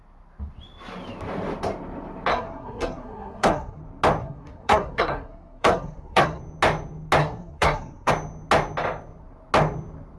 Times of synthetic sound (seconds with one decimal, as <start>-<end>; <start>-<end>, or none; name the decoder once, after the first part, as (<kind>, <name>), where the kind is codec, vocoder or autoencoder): 2.3-3.8 (codec, SNAC); 4.2-6.4; 7.2-8.1